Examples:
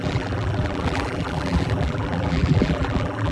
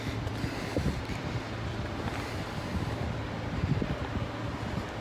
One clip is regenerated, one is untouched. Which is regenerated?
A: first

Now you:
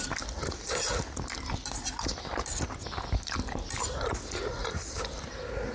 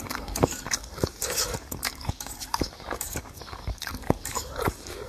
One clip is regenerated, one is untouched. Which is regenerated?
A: second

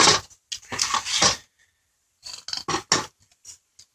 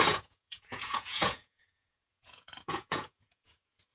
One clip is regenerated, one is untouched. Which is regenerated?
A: second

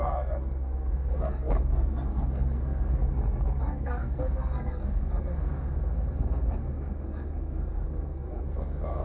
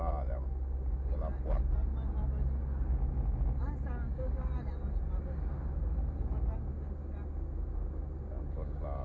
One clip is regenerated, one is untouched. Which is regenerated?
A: first